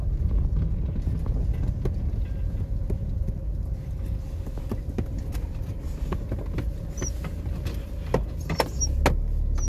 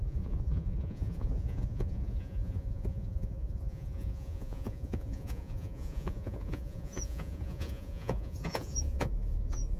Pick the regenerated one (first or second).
second